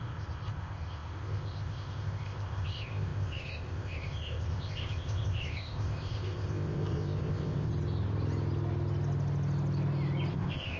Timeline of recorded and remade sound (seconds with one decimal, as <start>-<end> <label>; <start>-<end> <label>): 0.0-7.7 remade; 7.7-10.3 recorded; 10.3-10.8 remade